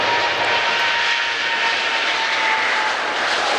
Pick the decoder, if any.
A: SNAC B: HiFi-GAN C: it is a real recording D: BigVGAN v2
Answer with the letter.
C